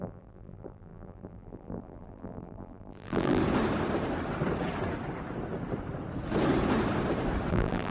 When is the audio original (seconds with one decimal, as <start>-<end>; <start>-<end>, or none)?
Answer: 3.4-7.5